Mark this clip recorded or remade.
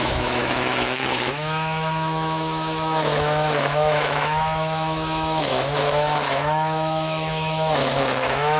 remade